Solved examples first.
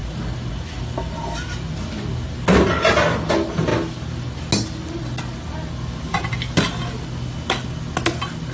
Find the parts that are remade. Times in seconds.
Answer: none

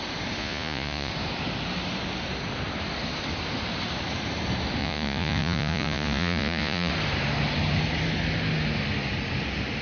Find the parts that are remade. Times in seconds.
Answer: 0.4-1.1 (vocoder, Vocos); 4.8-6.9

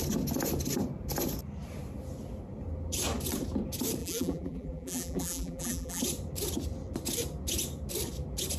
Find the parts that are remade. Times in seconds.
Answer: 4.0-6.0 (vocoder, BigVGAN v2)

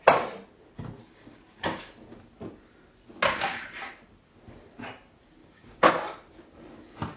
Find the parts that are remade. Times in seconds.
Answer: 1.0-1.9 (codec, DAC); 5.4-5.9

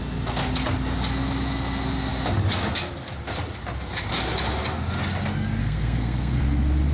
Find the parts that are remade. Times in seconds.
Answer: 5.6-6.4 (codec, SNAC)

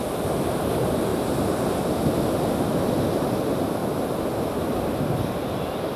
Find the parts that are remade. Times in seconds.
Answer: 3.8-5.4 (vocoder, BigVGAN v2)

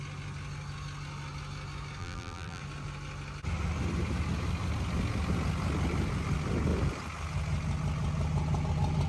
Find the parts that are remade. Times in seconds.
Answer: 2.0-2.6 (vocoder, BigVGAN v2)